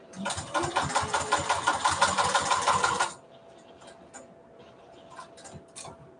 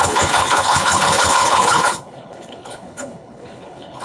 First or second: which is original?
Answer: first